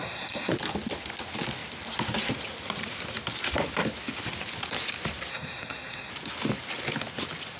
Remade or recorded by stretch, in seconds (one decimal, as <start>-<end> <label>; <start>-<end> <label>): 0.0-0.5 remade; 0.5-5.3 recorded; 5.3-6.1 remade; 6.1-7.6 recorded